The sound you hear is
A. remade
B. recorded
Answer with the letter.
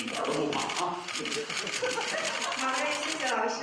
B